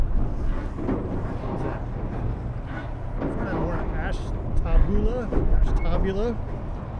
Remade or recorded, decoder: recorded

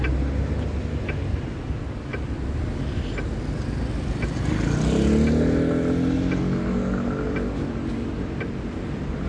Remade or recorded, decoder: recorded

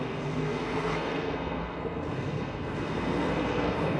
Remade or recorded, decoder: remade, codec, SNAC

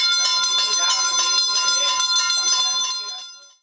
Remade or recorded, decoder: recorded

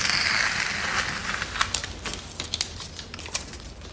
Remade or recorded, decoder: recorded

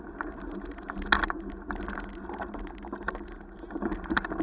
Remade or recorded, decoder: recorded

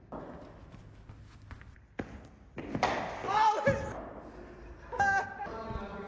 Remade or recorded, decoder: recorded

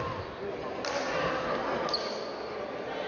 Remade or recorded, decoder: recorded